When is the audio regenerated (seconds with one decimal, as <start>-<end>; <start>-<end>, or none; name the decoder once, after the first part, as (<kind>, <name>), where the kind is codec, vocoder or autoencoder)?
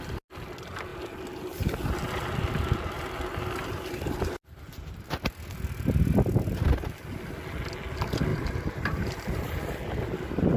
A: 8.3-9.1 (vocoder, BigVGAN v2)